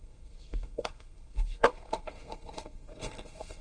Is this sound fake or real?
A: fake